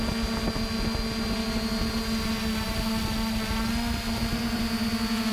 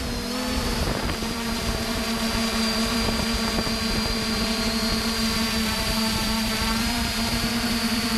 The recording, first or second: first